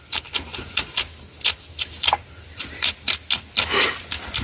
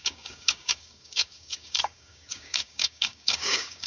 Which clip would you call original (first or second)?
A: first